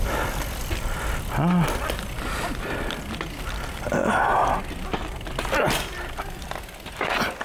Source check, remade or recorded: recorded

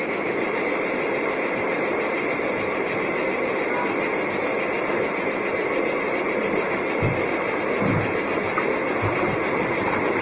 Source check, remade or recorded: recorded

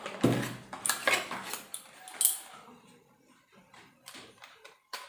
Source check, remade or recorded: recorded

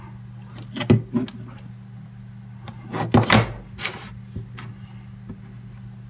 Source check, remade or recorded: recorded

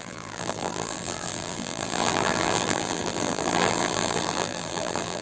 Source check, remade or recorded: remade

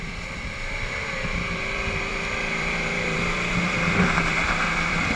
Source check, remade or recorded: remade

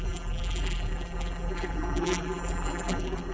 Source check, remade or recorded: remade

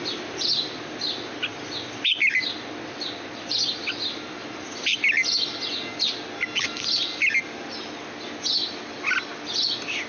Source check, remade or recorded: recorded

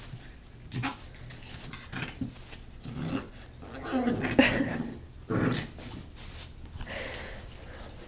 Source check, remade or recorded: recorded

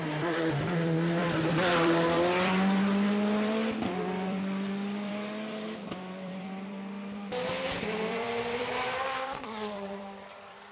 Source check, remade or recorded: remade